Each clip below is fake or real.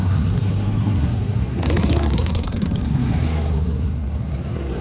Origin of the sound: fake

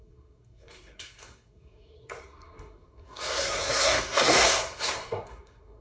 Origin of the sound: fake